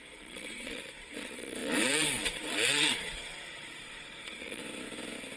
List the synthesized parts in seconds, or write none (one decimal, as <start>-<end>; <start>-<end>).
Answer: 0.0-4.6